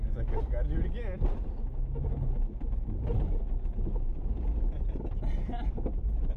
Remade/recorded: recorded